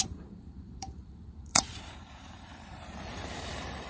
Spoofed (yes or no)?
yes